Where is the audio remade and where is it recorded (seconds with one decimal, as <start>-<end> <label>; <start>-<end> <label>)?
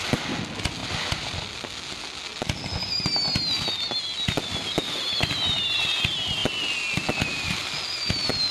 0.0-0.8 recorded; 0.8-1.4 remade; 1.4-8.5 recorded